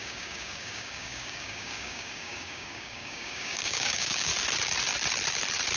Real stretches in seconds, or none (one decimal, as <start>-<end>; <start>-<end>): 4.3-5.8

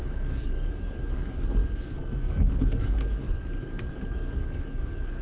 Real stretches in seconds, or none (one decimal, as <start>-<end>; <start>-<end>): 1.6-2.3

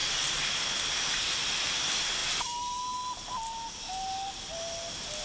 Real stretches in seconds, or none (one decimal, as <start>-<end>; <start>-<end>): 0.0-5.2

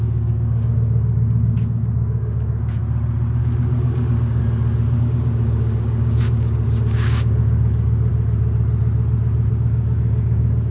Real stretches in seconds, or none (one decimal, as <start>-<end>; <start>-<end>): 2.8-3.4; 4.4-5.0; 8.1-9.5

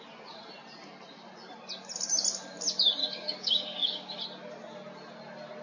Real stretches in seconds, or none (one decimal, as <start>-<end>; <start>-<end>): 0.0-3.0; 4.2-5.6